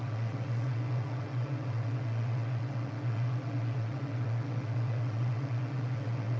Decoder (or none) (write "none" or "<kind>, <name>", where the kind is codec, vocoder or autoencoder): vocoder, WaveNeXt